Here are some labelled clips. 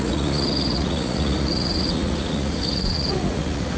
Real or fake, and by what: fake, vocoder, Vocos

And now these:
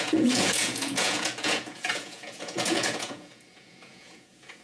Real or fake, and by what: fake, vocoder, Vocos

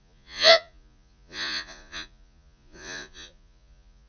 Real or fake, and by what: fake, vocoder, Vocos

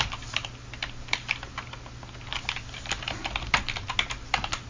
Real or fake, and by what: real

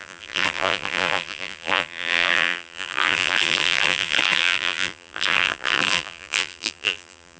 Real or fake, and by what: fake, vocoder, BigVGAN v2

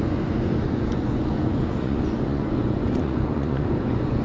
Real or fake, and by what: fake, vocoder, Vocos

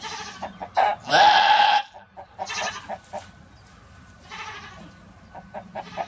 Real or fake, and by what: real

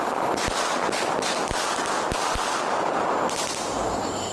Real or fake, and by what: real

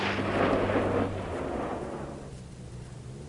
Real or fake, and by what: real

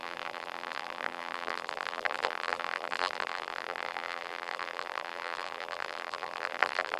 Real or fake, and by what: fake, vocoder, BigVGAN v2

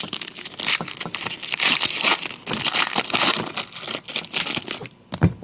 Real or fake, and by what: real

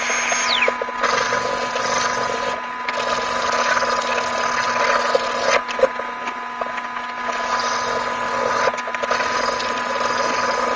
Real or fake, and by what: real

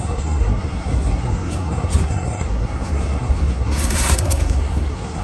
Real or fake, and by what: fake, codec, SNAC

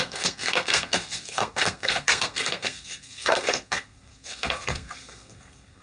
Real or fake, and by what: fake, codec, SNAC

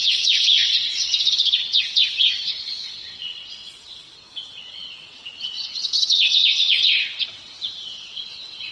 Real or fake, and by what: fake, vocoder, WaveNeXt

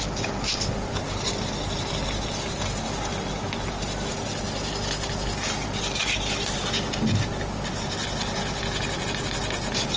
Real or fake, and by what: real